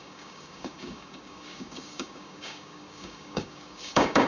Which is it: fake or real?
fake